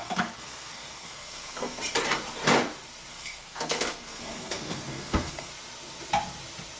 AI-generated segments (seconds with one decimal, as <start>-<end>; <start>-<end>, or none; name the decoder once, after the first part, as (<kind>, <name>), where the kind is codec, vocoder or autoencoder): 0.0-1.8 (codec, SNAC); 3.1-5.5